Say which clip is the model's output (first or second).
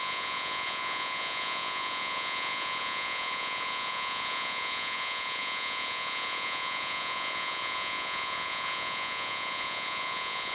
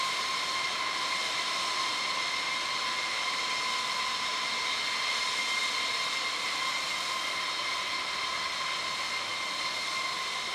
first